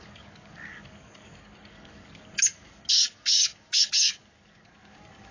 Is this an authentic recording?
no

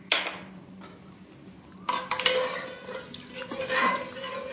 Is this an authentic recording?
yes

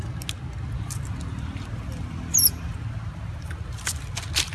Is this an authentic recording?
yes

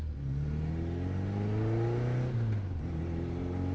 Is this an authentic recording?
yes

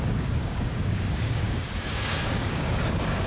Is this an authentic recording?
no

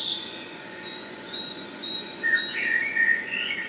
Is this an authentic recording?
no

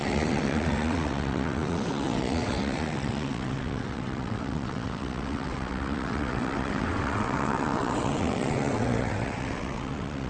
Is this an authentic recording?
no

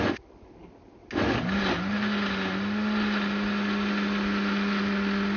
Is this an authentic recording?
yes